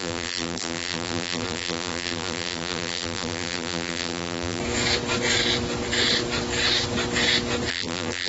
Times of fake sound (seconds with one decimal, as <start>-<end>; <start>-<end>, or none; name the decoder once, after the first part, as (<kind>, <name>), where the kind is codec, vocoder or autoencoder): 0.0-4.6 (vocoder, BigVGAN v2); 7.7-8.3